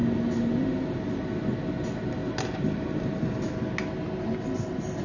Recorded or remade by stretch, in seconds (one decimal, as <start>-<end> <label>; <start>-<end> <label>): 0.0-5.0 recorded